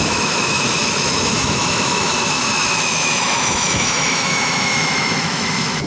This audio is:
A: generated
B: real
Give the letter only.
A